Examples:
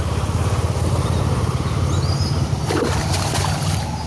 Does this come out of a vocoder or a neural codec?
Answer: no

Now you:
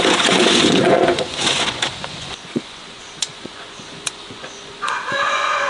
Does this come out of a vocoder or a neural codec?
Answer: yes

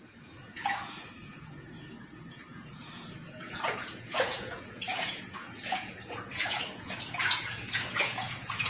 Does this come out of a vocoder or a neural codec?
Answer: yes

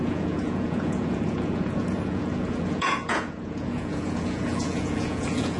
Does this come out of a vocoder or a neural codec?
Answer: yes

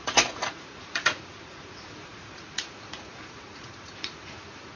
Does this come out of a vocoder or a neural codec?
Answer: yes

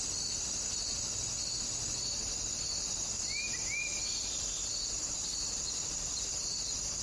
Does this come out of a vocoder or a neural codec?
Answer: no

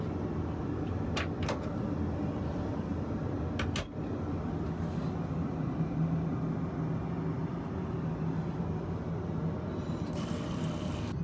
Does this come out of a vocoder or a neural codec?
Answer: no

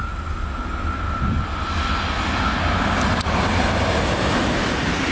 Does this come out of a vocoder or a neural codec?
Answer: no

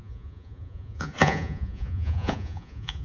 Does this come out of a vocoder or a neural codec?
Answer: yes